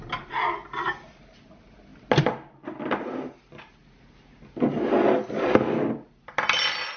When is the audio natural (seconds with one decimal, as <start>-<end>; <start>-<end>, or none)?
0.0-7.0